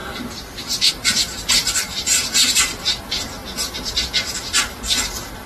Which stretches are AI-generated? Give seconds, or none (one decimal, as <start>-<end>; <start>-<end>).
0.9-3.4

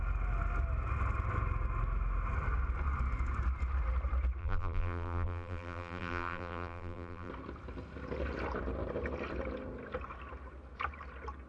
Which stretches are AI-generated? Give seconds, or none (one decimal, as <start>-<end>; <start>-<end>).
4.4-7.3

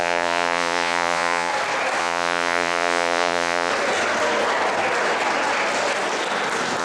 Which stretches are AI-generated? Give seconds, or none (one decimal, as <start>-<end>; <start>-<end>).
0.0-1.5; 2.0-3.7

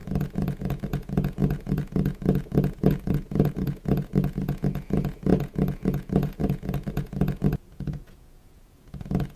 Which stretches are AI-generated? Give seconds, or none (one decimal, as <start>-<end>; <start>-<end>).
0.0-9.4

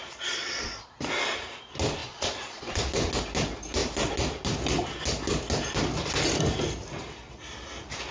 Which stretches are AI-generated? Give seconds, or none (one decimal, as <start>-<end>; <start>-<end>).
0.0-1.0; 2.0-2.8

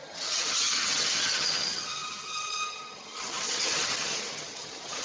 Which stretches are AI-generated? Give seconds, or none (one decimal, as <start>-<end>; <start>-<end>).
0.0-5.0

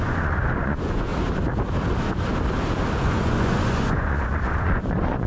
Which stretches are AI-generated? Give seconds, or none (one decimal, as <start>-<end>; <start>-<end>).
0.0-1.1; 3.0-5.3